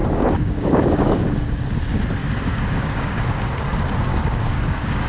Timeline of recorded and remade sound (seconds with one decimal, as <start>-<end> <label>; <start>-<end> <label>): 0.0-1.5 remade; 1.5-2.2 recorded; 2.2-3.2 remade; 3.2-4.1 recorded; 4.1-5.1 remade